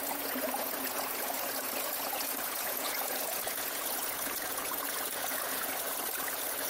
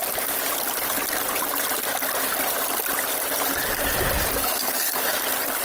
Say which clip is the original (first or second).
second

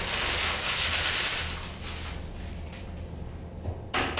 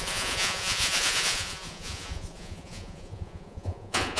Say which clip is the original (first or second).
first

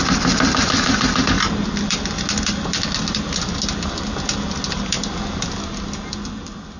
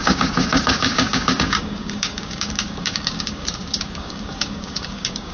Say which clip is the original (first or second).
first